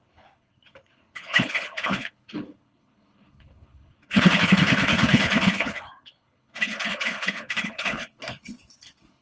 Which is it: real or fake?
fake